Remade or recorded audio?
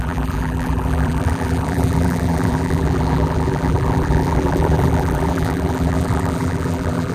remade